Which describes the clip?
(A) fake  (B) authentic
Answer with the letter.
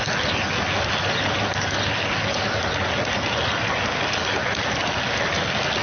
B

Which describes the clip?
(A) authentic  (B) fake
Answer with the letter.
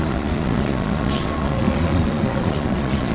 B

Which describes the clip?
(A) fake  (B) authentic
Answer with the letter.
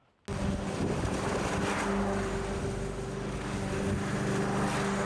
B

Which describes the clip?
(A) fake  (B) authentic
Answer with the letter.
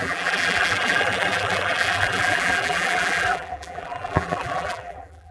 A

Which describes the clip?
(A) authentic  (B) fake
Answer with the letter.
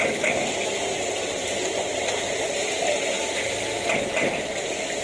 A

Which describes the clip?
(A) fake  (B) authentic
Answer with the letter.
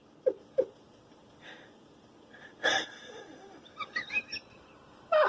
B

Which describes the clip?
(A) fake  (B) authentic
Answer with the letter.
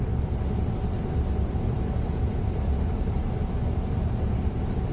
B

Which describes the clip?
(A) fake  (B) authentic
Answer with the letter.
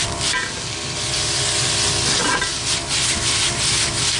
A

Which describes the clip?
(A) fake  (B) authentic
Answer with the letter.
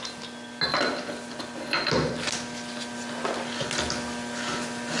B